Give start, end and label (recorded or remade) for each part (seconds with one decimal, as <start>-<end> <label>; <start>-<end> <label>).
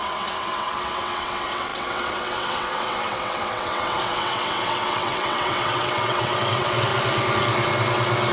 0.0-6.9 remade; 6.9-8.3 recorded